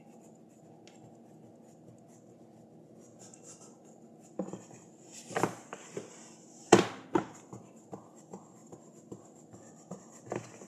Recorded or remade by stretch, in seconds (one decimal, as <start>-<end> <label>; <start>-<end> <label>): 0.0-5.2 recorded; 5.2-5.9 remade; 5.9-10.7 recorded